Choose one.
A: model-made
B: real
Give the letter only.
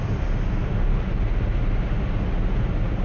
B